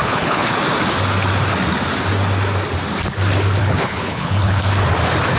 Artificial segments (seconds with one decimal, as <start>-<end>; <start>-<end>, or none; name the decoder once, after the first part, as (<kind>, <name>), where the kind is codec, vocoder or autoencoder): 0.0-0.6 (codec, HILCodec); 3.6-4.6